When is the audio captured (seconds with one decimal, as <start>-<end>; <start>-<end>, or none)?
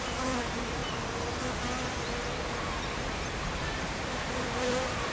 0.8-2.6